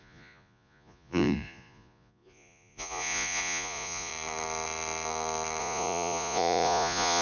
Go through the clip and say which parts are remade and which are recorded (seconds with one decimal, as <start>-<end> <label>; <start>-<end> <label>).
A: 0.0-4.1 remade; 4.1-5.6 recorded; 5.6-7.2 remade